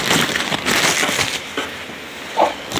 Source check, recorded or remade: recorded